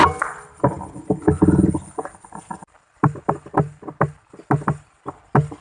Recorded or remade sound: recorded